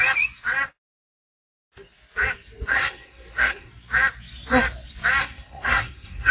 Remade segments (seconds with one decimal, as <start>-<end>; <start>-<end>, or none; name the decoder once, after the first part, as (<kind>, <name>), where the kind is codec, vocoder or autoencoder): 2.7-3.7 (codec, SNAC); 5.2-6.3